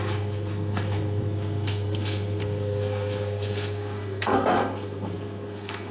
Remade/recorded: remade